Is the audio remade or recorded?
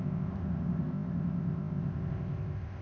remade